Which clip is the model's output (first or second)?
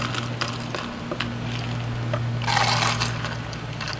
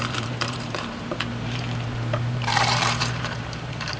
second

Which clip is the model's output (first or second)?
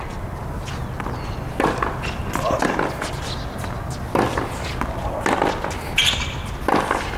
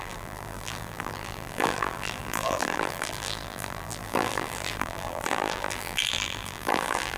second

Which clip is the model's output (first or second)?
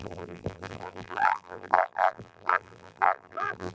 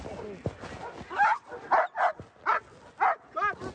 first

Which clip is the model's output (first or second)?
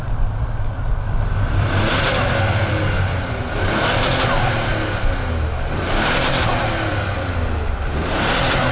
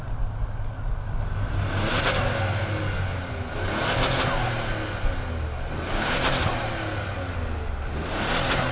first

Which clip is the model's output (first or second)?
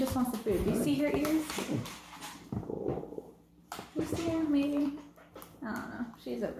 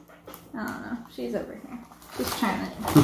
first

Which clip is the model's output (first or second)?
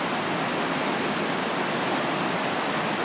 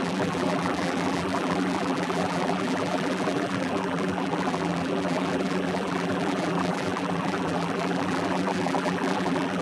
second